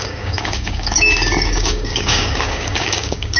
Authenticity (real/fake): fake